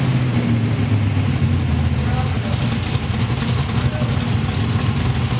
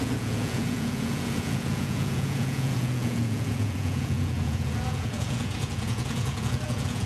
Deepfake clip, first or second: second